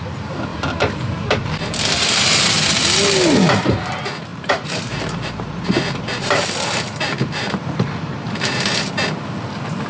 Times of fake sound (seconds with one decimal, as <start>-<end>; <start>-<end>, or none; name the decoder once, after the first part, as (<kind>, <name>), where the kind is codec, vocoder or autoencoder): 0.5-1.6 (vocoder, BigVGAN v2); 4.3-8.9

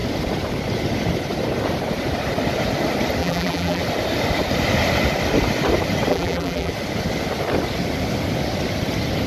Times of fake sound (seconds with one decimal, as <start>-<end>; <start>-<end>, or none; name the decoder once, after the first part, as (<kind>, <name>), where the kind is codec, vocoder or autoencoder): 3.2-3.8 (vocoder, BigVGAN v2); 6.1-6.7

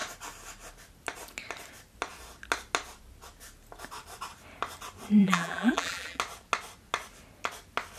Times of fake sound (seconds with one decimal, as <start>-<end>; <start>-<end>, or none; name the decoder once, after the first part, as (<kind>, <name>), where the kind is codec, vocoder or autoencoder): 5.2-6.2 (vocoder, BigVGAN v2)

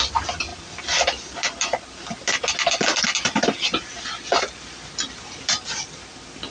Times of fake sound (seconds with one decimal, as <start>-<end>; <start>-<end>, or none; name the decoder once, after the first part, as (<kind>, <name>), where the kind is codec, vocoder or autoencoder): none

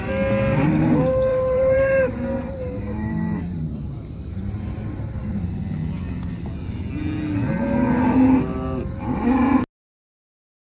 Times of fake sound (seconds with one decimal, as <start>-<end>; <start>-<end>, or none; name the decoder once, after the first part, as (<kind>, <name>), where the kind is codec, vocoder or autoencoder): 1.3-5.4 (vocoder, BigVGAN v2)

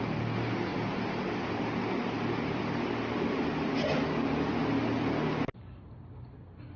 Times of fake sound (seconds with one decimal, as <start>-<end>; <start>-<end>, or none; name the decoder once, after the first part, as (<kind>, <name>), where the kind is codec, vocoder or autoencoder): none